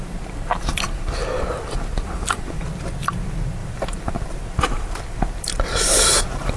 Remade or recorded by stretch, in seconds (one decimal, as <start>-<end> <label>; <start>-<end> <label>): 0.0-0.7 recorded; 0.7-2.6 remade; 2.6-3.6 recorded; 3.6-5.9 remade; 5.9-6.6 recorded